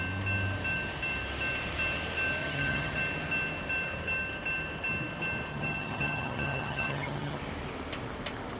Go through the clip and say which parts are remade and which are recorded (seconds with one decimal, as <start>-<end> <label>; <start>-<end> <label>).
0.0-2.4 recorded; 2.4-3.0 remade; 3.0-5.5 recorded; 5.5-7.4 remade; 7.4-8.6 recorded